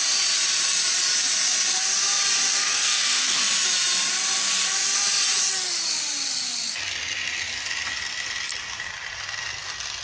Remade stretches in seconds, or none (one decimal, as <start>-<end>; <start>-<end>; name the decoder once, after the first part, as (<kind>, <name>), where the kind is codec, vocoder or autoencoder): 2.6-3.4 (codec, SNAC)